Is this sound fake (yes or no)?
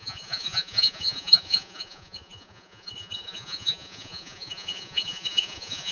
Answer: yes